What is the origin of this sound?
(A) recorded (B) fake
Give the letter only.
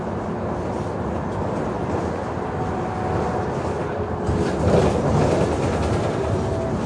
A